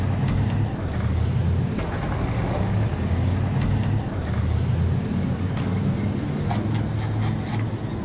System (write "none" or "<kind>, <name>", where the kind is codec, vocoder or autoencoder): none